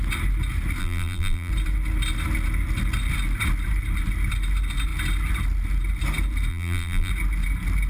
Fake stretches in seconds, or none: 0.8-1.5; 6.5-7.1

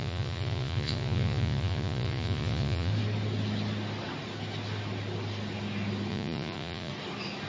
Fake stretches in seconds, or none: 0.0-2.9; 6.1-6.9